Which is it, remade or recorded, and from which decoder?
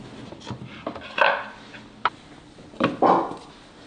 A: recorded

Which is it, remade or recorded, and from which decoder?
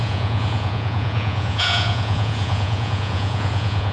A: remade, vocoder, Vocos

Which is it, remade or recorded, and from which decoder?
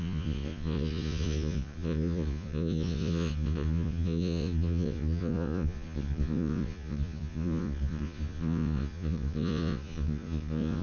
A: remade, vocoder, Vocos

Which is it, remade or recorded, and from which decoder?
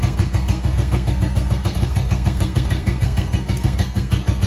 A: remade, codec, SNAC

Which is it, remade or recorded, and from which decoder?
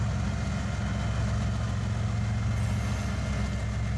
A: recorded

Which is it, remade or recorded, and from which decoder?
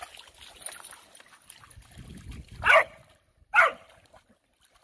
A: recorded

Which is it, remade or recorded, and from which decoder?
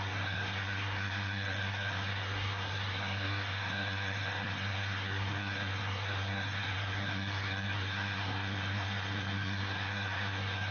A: remade, codec, SNAC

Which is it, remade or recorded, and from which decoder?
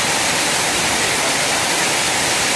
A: recorded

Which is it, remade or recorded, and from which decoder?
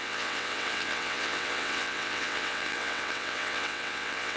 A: remade, vocoder, WaveNeXt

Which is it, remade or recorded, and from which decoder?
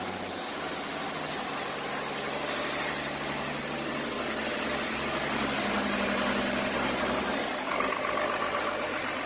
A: recorded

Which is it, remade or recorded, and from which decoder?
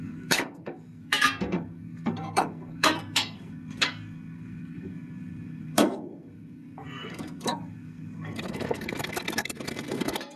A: remade, codec, SNAC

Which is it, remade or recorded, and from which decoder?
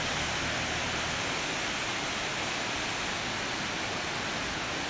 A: recorded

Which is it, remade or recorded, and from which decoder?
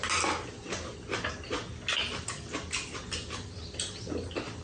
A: recorded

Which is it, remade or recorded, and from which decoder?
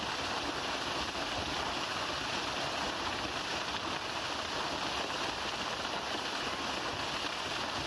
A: recorded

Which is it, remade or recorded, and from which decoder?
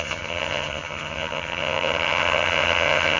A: remade, vocoder, HiFi-GAN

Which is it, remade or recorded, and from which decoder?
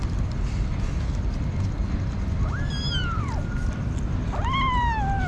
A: recorded